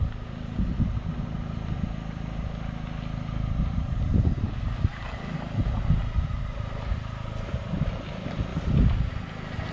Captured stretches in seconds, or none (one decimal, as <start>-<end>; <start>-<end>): 0.0-9.7

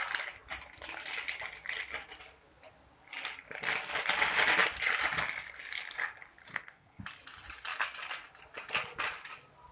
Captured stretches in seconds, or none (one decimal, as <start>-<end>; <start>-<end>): 0.0-6.5; 7.0-9.7

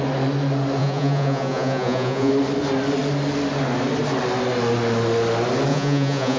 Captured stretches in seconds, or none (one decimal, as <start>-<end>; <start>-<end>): 0.0-0.8; 2.3-5.7

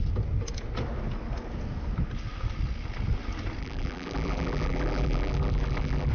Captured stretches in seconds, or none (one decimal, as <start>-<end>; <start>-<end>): 0.0-3.6

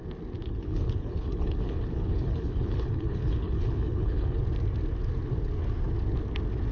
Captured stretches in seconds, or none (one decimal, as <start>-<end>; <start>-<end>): 0.0-0.4; 4.4-6.7

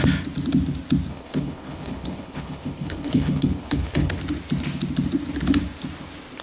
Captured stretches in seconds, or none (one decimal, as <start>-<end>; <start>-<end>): 0.0-1.1; 4.2-6.4

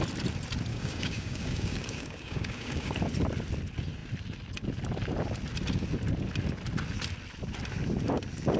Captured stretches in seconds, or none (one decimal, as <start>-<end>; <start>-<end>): 0.0-0.7; 2.9-8.6

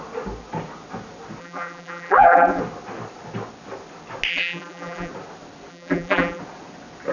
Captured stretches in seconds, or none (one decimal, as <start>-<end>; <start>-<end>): 0.0-1.4; 2.6-4.3; 5.1-5.7; 6.4-7.1